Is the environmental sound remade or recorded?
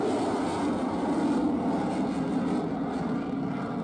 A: recorded